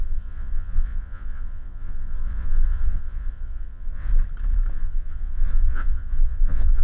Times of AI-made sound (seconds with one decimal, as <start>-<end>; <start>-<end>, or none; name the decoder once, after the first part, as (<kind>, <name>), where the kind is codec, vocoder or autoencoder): 0.0-4.1 (vocoder, Vocos); 4.7-6.8